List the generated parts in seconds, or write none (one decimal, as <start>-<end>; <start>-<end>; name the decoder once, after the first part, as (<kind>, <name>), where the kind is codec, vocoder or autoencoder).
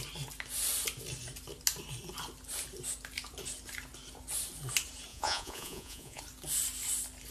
5.1-6.2 (vocoder, Vocos)